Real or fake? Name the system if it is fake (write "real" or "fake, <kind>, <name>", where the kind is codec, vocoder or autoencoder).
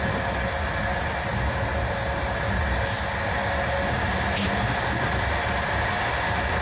real